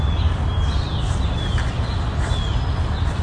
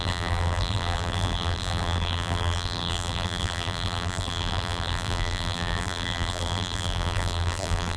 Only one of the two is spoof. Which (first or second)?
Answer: second